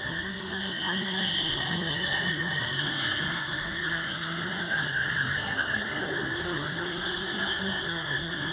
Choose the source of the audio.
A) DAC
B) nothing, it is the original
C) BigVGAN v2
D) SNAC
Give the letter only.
D